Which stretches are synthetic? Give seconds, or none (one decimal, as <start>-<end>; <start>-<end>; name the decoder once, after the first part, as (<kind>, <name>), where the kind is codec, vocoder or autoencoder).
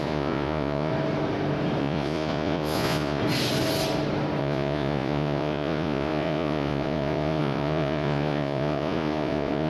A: 0.0-0.9 (vocoder, Vocos); 1.8-3.2; 4.4-9.7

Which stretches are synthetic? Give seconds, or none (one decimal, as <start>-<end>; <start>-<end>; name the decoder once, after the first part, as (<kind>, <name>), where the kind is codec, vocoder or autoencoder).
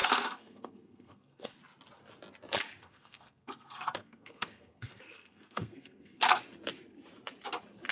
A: 0.0-1.6 (codec, SNAC); 2.8-6.4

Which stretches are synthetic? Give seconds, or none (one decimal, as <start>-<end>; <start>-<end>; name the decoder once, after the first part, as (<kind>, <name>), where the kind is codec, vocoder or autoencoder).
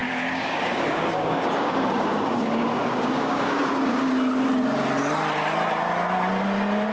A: 0.0-4.1 (codec, DAC)